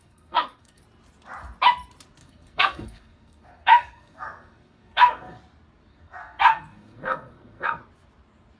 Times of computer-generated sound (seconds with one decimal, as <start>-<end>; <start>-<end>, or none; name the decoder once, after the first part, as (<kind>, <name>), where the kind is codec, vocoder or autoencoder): 0.0-0.8 (codec, SNAC); 2.2-5.4; 5.9-7.8